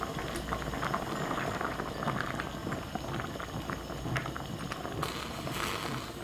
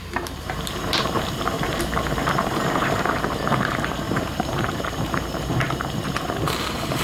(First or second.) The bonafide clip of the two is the first